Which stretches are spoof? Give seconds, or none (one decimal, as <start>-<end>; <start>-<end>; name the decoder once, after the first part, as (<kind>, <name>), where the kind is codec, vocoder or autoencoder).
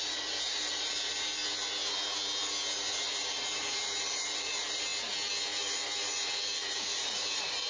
0.0-1.4 (vocoder, BigVGAN v2); 3.0-4.9; 5.6-7.7